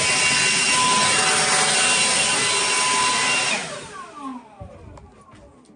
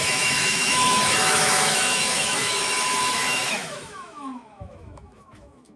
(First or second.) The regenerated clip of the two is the second